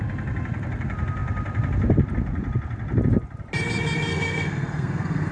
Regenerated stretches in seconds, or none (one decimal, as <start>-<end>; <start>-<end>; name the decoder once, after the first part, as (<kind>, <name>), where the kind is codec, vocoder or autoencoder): 4.1-5.3 (codec, SNAC)